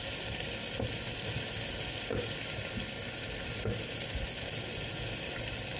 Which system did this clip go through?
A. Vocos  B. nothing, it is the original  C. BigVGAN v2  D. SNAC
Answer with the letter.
B